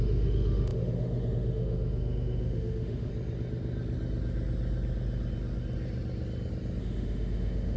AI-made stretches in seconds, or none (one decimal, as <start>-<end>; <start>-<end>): 0.0-3.1; 6.8-7.8